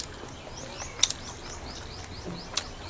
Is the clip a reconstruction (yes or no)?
no